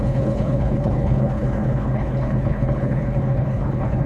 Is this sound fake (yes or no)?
yes